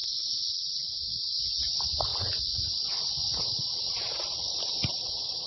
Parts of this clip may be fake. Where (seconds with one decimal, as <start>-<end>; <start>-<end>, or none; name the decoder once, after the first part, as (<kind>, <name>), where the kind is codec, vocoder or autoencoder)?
none